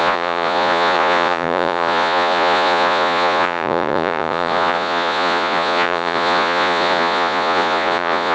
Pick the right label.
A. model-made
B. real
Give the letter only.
A